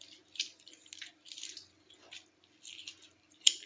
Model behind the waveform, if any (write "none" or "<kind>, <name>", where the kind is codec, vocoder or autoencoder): none